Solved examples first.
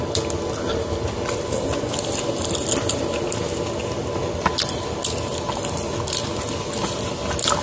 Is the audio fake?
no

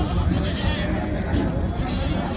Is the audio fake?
no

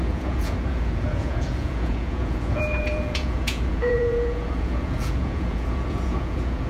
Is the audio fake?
yes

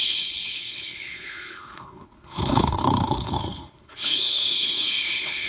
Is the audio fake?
yes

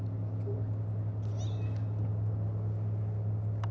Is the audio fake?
no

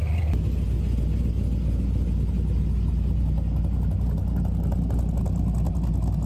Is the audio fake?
no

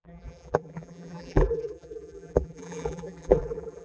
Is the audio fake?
yes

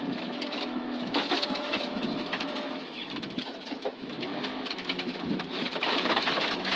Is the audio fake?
yes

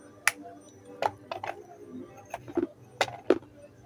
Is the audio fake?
no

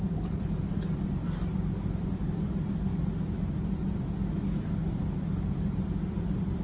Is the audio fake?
yes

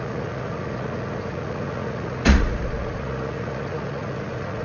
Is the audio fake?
yes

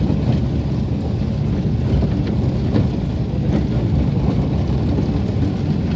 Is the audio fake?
no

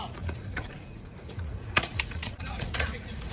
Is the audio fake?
yes